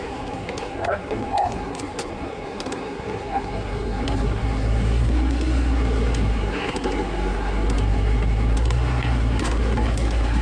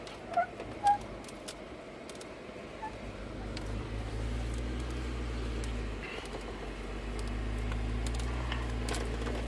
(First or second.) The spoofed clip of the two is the first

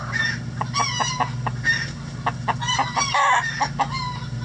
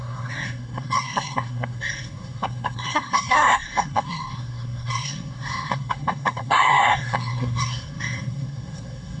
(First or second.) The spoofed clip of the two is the second